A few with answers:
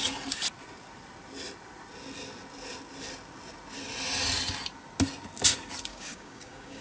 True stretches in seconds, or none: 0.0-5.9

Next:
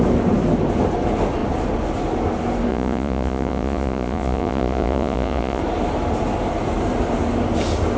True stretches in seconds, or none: 0.0-2.7; 5.6-8.0

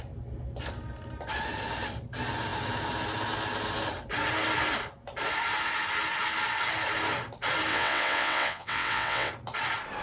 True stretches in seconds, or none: 0.0-7.7; 9.3-10.0

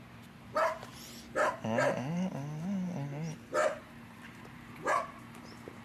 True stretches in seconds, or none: 0.0-3.6

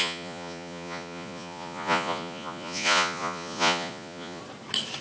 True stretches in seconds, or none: 4.4-5.0

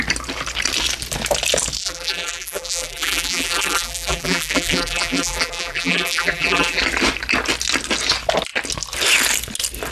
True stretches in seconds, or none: 0.0-1.8; 6.8-9.9

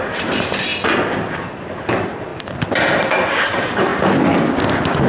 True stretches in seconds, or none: 0.7-1.3; 2.3-3.0; 3.9-5.1

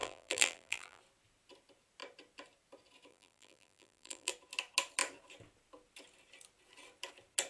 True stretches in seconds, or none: 1.0-3.1; 4.3-7.5